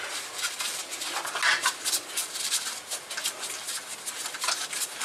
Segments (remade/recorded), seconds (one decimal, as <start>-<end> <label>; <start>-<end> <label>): 0.0-5.0 recorded